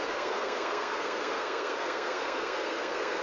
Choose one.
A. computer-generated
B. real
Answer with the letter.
A